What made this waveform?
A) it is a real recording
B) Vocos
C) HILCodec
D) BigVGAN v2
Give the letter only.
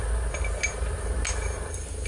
A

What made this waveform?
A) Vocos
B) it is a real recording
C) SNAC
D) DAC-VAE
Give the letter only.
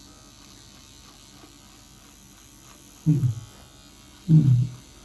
B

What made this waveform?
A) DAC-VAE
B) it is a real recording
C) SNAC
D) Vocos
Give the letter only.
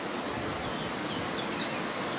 B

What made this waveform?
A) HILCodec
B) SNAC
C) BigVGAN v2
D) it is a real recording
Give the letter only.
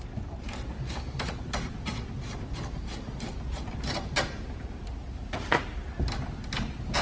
D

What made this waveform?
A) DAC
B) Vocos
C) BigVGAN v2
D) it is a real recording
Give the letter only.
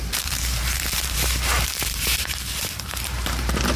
C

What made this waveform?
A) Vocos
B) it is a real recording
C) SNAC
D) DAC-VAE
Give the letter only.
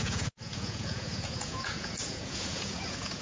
A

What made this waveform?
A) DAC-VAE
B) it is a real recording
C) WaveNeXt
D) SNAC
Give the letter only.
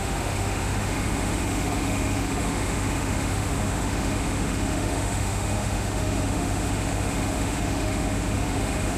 A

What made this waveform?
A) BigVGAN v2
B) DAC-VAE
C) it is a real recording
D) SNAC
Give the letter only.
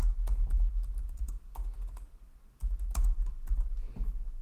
C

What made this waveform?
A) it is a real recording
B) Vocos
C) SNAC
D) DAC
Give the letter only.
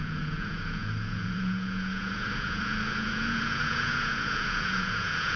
B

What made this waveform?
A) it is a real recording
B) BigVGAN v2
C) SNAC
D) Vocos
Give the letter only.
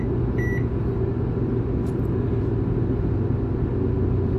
A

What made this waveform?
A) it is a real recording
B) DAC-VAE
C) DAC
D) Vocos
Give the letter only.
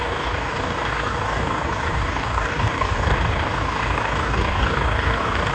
C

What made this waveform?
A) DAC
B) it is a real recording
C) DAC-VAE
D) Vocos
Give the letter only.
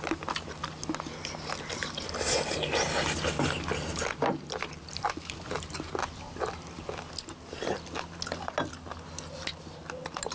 B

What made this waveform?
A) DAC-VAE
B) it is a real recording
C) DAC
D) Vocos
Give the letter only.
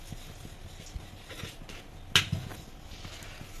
B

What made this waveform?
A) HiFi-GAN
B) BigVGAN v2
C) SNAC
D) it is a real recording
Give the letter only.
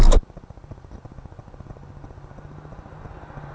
D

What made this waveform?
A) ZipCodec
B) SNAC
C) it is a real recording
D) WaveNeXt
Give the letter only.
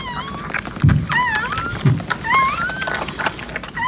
C